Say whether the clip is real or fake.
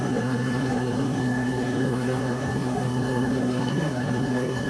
fake